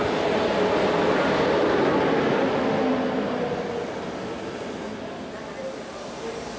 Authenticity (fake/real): real